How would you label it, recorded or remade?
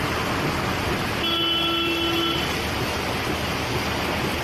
recorded